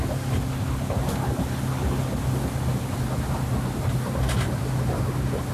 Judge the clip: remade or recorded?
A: recorded